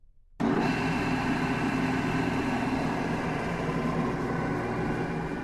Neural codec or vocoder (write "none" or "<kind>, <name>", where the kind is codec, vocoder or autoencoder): none